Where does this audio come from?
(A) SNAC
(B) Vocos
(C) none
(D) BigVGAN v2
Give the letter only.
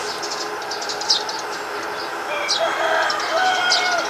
C